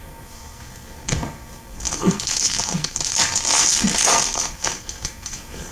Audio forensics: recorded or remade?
remade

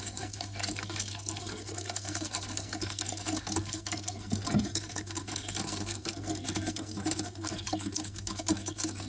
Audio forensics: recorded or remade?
remade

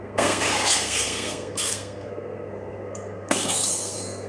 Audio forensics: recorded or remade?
remade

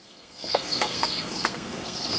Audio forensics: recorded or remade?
remade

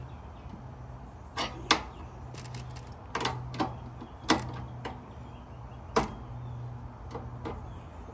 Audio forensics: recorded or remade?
recorded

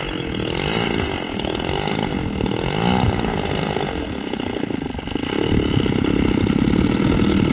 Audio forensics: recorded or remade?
recorded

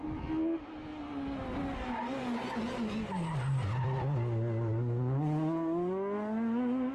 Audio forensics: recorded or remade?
recorded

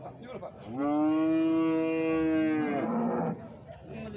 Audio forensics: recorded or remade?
recorded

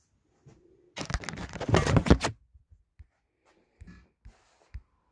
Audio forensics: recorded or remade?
recorded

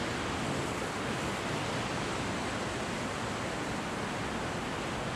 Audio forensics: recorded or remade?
recorded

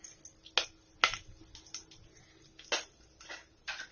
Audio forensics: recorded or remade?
recorded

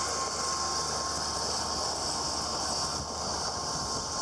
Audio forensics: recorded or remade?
recorded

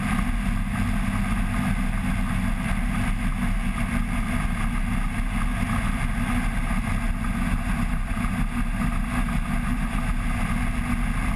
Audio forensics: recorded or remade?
recorded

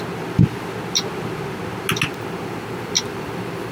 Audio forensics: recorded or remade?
recorded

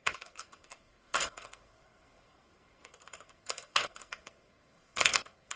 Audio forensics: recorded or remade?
remade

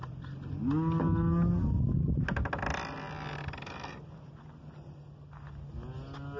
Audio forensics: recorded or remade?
recorded